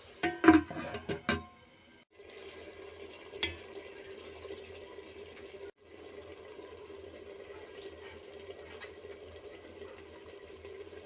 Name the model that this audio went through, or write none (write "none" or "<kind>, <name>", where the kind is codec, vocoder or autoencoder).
none